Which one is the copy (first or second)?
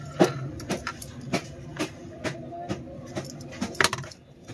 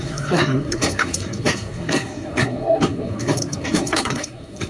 second